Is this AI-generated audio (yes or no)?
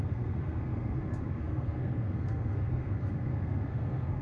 yes